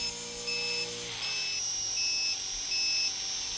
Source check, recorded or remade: recorded